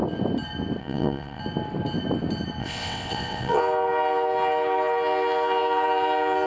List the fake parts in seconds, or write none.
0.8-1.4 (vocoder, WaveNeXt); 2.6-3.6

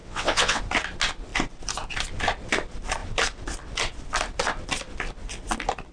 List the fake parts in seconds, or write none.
0.0-0.6 (vocoder, WaveNeXt)

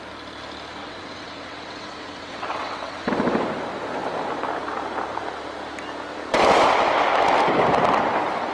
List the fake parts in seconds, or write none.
0.8-3.1 (vocoder, WaveNeXt)

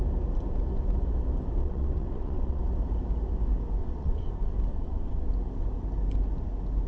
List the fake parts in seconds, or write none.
1.6-2.6 (vocoder, WaveNeXt); 3.8-4.3; 4.7-5.3